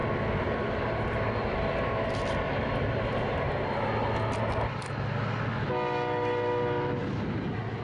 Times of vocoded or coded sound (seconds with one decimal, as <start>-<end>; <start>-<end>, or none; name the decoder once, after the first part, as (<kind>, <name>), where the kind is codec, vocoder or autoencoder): none